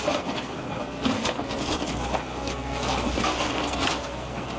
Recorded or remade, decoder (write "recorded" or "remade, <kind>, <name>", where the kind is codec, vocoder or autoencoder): remade, codec, SNAC